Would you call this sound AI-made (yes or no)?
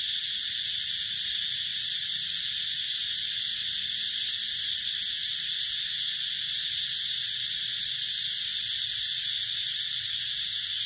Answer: no